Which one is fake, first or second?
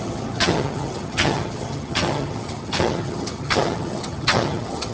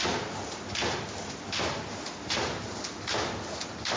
first